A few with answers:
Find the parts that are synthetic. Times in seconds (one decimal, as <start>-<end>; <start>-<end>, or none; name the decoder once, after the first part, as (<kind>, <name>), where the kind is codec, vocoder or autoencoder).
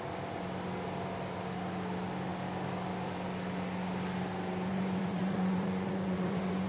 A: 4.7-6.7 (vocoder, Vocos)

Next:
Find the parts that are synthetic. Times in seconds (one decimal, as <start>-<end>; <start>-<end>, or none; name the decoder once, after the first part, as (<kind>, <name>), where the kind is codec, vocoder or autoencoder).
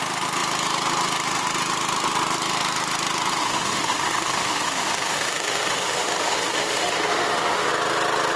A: 3.4-7.7 (autoencoder, DAC-VAE)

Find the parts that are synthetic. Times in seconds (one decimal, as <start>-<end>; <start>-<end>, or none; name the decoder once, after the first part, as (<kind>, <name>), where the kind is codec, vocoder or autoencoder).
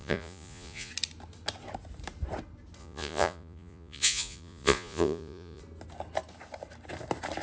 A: 0.0-0.9 (vocoder, Vocos); 2.8-5.6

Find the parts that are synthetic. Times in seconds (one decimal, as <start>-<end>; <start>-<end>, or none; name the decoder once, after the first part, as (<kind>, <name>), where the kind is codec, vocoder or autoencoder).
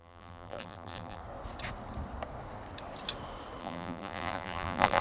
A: 0.0-1.2 (vocoder, BigVGAN v2); 3.6-5.0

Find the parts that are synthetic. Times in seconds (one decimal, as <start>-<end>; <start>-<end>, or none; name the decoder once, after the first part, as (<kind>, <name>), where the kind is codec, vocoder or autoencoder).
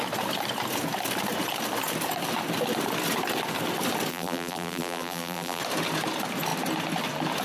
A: 4.1-5.6 (vocoder, BigVGAN v2)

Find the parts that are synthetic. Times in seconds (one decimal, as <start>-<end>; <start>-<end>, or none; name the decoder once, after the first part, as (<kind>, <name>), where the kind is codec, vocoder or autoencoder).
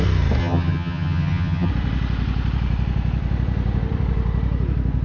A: 0.4-1.7 (vocoder, HiFi-GAN)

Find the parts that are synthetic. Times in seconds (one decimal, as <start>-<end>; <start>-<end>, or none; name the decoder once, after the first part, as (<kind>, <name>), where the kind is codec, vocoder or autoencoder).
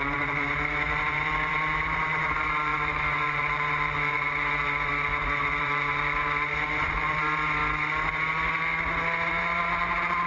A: 0.0-5.1 (vocoder, BigVGAN v2); 5.6-7.6; 9.4-10.3